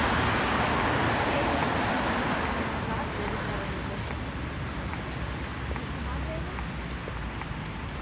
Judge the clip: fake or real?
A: real